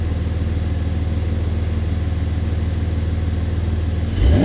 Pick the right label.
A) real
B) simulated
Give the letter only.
A